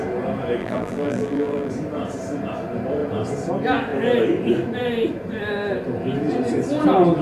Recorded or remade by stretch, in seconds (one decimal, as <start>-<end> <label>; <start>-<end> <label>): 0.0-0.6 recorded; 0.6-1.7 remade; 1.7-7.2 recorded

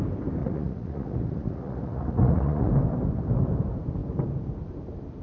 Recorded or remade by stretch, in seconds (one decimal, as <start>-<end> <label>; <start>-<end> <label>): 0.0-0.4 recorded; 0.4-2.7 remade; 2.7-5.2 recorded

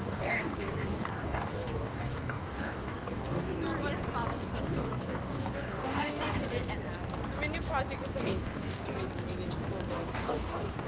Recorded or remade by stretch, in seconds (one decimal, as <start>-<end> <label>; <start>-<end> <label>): 0.0-3.5 remade; 3.5-4.4 recorded; 4.4-6.4 remade; 6.4-8.2 recorded; 8.2-8.8 remade; 8.8-9.9 recorded; 9.9-10.9 remade

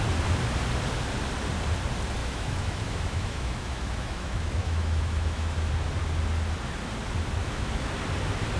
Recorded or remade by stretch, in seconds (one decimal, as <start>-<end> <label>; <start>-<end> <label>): 0.0-2.2 recorded; 2.2-5.7 remade; 5.7-7.4 recorded; 7.4-7.9 remade; 7.9-8.6 recorded

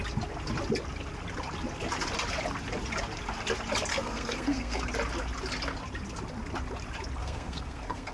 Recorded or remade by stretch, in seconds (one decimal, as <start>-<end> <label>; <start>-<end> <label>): 0.0-3.9 recorded; 3.9-4.8 remade; 4.8-7.2 recorded; 7.2-8.1 remade

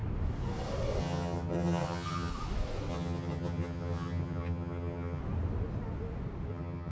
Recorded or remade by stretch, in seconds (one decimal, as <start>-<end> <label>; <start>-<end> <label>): 0.0-1.0 recorded; 1.0-2.3 remade; 2.3-2.9 recorded; 2.9-5.2 remade; 5.2-6.5 recorded; 6.5-6.9 remade

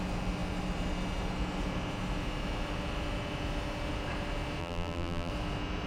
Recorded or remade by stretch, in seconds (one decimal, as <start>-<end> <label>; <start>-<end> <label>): 0.0-4.6 recorded; 4.6-5.3 remade; 5.3-5.9 recorded

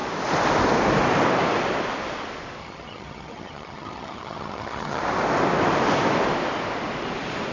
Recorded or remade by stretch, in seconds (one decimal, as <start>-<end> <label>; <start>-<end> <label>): 0.0-2.6 recorded; 2.6-5.0 remade; 5.0-7.5 recorded